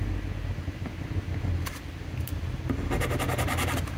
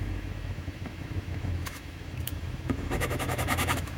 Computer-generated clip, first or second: second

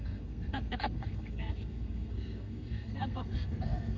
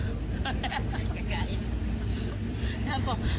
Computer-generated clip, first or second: first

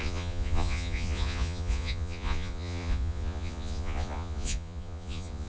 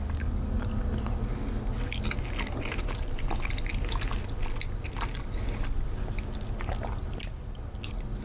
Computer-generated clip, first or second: first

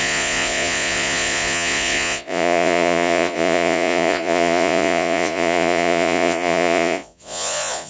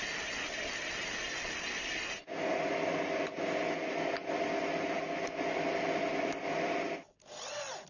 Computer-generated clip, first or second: first